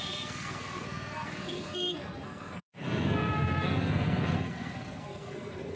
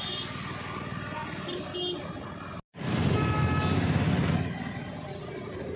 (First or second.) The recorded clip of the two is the second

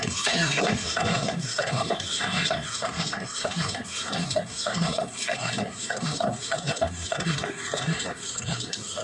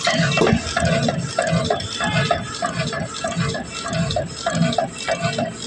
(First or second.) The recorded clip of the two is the second